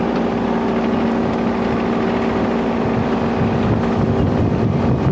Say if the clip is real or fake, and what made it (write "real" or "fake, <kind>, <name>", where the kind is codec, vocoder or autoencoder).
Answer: real